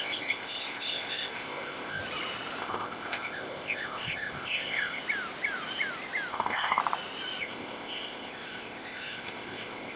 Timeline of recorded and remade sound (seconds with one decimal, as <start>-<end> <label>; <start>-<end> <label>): 0.0-2.0 remade; 2.0-2.6 recorded; 2.6-5.0 remade; 5.0-6.3 recorded; 6.3-6.8 remade; 6.8-7.4 recorded; 7.4-10.0 remade